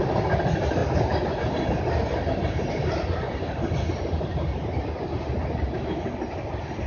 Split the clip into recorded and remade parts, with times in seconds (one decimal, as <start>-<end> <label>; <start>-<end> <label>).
0.0-6.9 recorded